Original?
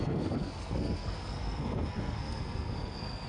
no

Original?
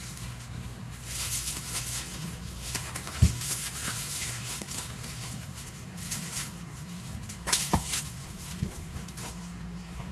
no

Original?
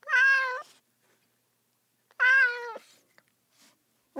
yes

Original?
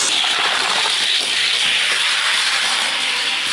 yes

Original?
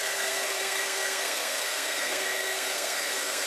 no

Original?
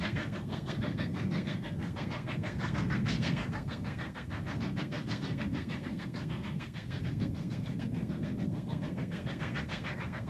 no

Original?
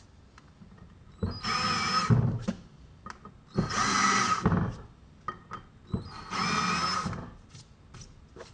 yes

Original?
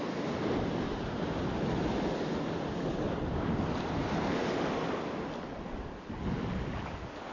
yes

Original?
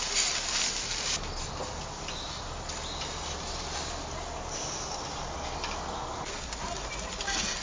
yes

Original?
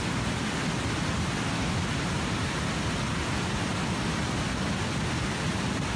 yes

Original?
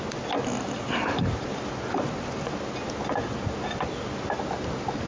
yes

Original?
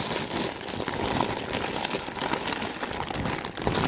yes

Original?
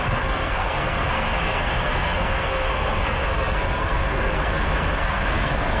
no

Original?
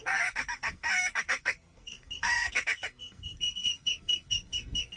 no